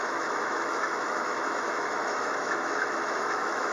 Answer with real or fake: fake